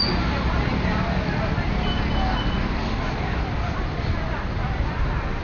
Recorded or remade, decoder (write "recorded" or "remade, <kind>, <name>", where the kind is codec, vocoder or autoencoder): recorded